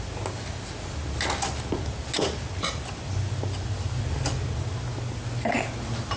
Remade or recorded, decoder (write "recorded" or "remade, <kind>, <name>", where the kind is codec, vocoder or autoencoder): recorded